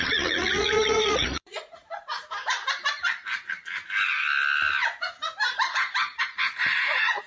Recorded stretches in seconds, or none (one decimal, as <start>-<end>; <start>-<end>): 1.8-6.2